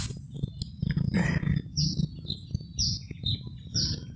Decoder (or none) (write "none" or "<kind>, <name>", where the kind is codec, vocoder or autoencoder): none